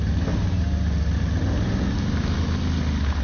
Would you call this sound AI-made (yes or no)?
no